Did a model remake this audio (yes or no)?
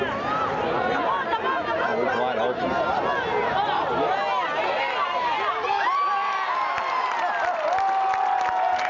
no